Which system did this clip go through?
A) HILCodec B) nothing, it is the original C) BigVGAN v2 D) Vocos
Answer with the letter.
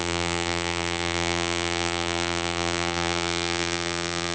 C